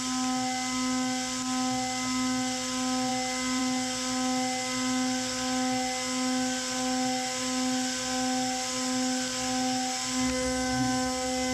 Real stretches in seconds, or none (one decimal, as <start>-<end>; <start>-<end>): 0.0-11.5